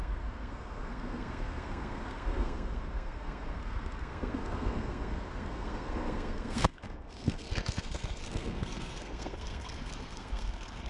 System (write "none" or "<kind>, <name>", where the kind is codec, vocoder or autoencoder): codec, SNAC